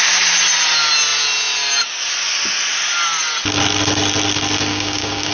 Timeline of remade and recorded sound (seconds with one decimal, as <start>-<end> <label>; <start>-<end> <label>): 0.0-4.7 recorded; 4.7-5.3 remade